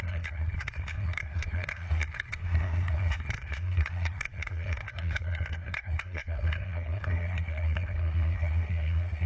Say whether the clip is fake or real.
fake